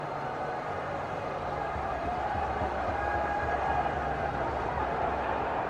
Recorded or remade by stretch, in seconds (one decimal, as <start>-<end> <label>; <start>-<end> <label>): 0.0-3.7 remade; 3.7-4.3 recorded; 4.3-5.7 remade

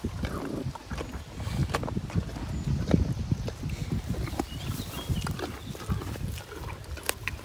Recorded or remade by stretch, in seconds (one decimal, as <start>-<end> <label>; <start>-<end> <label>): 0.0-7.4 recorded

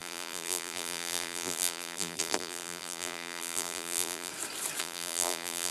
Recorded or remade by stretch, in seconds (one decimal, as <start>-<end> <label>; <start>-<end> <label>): 0.0-4.3 remade; 4.3-4.8 recorded; 4.8-5.7 remade

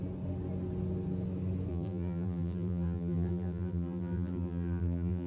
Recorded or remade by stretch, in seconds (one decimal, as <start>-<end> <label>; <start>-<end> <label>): 0.0-1.7 recorded; 1.7-5.3 remade

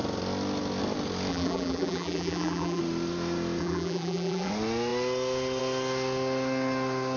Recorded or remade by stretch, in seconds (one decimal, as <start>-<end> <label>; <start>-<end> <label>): 0.0-1.3 recorded; 1.3-2.8 remade; 2.8-3.6 recorded; 3.6-4.5 remade; 4.5-7.2 recorded